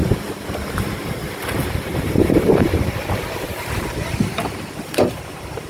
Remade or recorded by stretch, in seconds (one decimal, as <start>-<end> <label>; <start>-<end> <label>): 0.0-5.7 remade